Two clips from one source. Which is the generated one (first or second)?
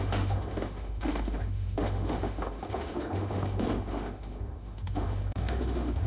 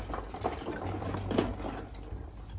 first